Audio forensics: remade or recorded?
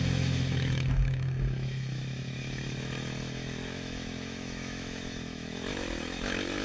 remade